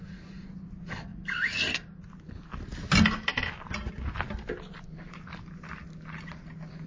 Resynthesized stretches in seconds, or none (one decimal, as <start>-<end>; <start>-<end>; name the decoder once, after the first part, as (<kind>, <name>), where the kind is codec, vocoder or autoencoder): none